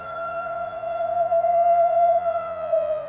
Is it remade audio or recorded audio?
remade